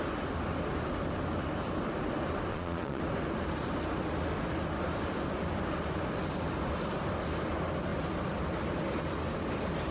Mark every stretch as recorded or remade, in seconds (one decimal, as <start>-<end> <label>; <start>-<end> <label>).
0.0-2.5 recorded; 2.5-3.0 remade; 3.0-9.9 recorded